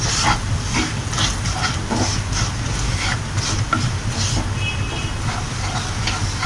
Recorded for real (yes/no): yes